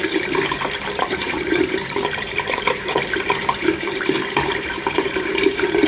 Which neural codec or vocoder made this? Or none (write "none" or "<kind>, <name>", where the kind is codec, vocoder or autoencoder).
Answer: vocoder, BigVGAN v2